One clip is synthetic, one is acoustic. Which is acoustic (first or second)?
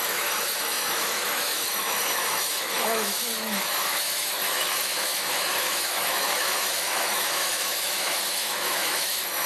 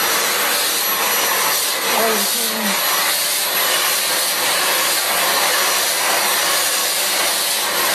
second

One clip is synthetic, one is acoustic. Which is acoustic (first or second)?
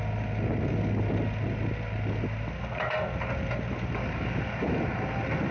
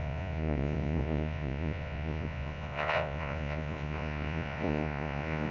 first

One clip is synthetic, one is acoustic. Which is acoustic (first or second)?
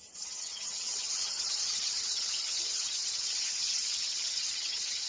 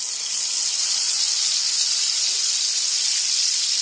second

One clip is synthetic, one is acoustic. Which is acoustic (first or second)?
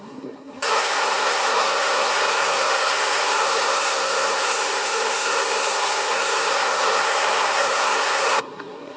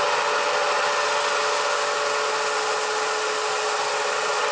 second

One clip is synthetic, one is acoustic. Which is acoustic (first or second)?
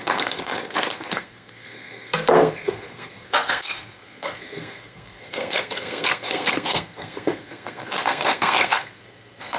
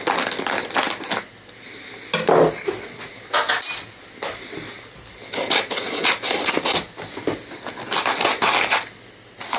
second